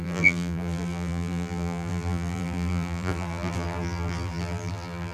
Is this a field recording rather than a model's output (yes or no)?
no